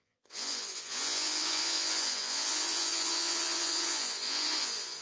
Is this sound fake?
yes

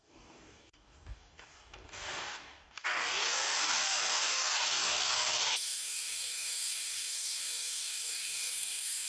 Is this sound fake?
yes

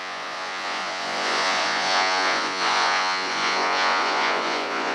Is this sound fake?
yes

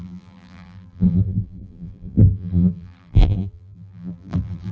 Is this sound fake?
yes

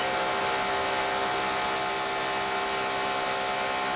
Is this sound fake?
no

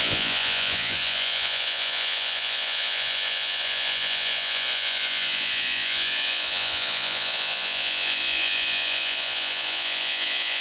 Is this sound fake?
yes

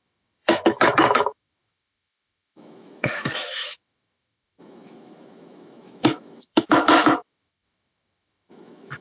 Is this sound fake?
yes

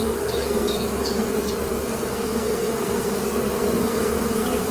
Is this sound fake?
yes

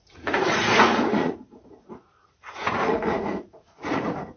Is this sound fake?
yes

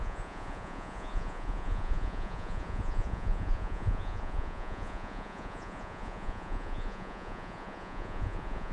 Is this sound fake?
yes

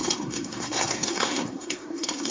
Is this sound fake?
yes